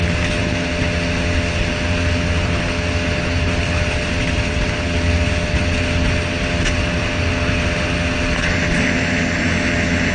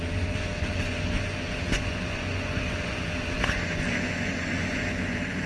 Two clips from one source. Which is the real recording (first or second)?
first